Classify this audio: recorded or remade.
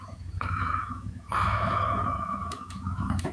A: remade